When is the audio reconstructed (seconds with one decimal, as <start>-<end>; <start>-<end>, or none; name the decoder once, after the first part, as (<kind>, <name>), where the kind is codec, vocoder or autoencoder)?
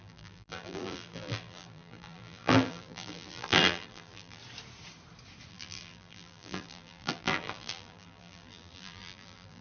0.0-4.4 (vocoder, BigVGAN v2); 5.5-9.6